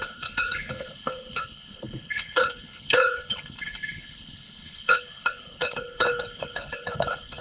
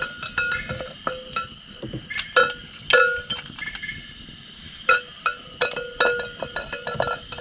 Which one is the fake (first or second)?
first